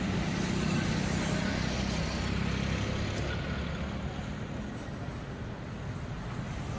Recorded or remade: recorded